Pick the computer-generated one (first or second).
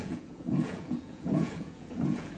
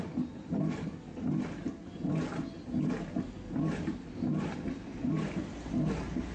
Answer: first